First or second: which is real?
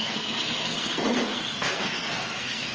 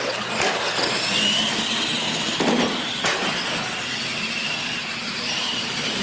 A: second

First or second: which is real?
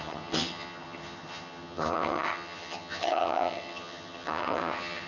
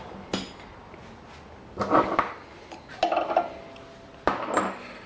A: second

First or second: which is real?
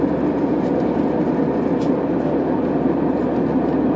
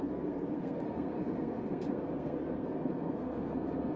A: first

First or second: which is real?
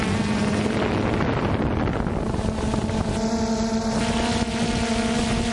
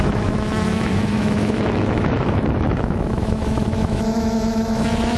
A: first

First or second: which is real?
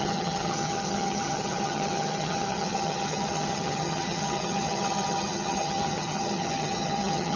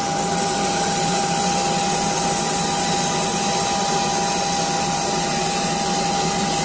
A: second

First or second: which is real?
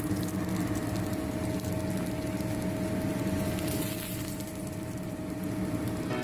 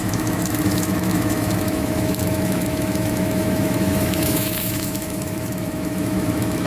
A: first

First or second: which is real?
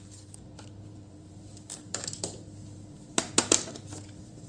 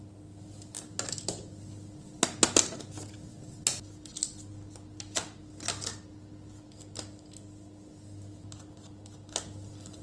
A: second